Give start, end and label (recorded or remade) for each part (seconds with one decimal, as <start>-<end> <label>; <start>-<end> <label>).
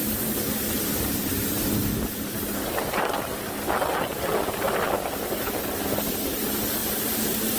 0.0-2.7 remade; 2.7-6.8 recorded; 6.8-7.6 remade